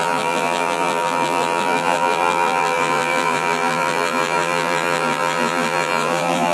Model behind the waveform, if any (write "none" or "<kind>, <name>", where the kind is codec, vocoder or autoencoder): vocoder, BigVGAN v2